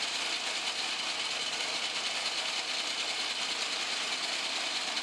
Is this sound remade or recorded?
recorded